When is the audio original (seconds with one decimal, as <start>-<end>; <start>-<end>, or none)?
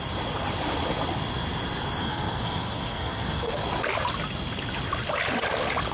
0.0-2.0; 3.6-5.9